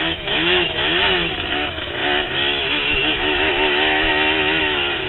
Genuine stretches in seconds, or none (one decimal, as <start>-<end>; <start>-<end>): 2.0-2.6; 4.1-4.6